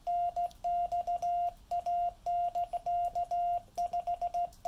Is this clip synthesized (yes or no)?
no